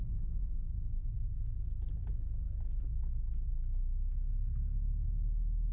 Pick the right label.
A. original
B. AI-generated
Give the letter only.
A